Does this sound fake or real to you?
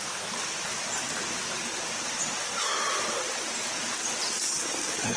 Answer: real